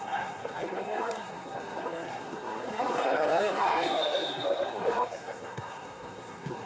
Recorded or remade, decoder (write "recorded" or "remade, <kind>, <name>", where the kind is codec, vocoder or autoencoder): remade, codec, SNAC